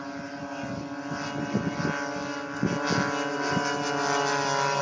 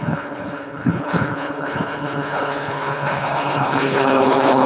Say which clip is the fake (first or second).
second